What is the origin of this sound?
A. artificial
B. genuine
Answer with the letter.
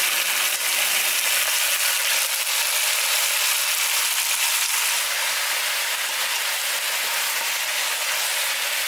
B